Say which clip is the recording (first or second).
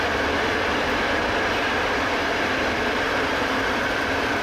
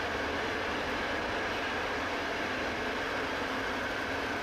second